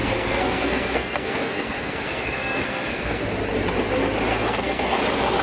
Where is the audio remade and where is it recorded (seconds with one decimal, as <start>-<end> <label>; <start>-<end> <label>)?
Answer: 0.0-3.2 remade; 3.2-4.3 recorded; 4.3-5.0 remade; 5.0-5.4 recorded